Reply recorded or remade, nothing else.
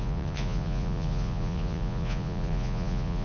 remade